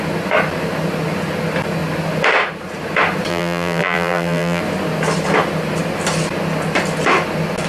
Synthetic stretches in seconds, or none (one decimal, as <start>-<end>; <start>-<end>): 3.3-4.6